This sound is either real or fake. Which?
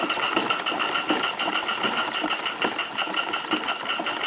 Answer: real